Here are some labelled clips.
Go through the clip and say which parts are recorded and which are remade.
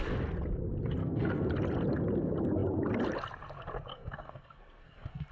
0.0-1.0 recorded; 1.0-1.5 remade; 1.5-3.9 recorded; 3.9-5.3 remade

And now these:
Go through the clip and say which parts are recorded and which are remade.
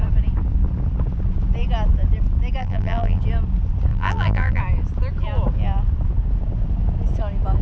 0.0-2.6 recorded; 2.6-3.2 remade; 3.2-3.9 recorded; 3.9-4.6 remade; 4.6-7.6 recorded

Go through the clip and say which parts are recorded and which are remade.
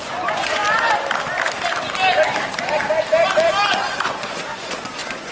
0.0-0.6 remade; 0.6-3.7 recorded; 3.7-5.3 remade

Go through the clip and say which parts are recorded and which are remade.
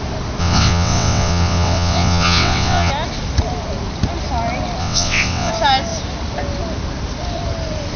0.0-0.4 recorded; 0.4-2.9 remade; 2.9-4.8 recorded; 4.8-5.5 remade; 5.5-8.0 recorded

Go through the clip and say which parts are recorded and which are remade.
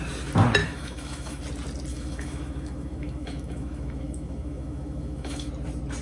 0.0-0.6 recorded; 0.6-1.4 remade; 1.4-1.9 recorded; 1.9-5.5 remade; 5.5-6.0 recorded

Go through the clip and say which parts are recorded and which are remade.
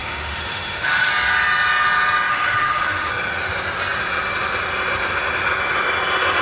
0.0-1.1 remade; 1.1-2.3 recorded; 2.3-3.1 remade; 3.1-6.4 recorded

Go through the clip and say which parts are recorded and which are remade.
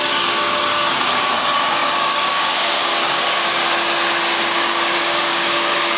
0.0-3.6 remade; 3.6-4.2 recorded; 4.2-6.0 remade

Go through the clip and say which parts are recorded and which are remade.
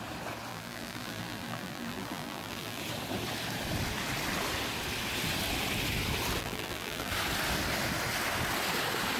0.0-0.5 recorded; 0.5-2.8 remade; 2.8-6.4 recorded; 6.4-7.1 remade; 7.1-9.2 recorded